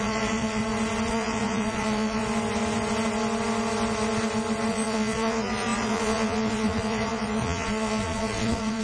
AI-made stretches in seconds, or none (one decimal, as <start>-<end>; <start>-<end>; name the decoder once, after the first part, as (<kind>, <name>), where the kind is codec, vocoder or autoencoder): 0.0-0.6 (vocoder, Vocos); 1.1-2.2; 4.7-8.8